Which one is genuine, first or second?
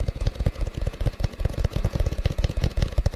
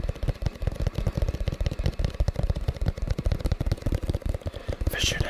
second